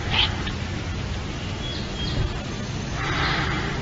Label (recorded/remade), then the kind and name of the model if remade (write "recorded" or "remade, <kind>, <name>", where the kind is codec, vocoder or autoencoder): recorded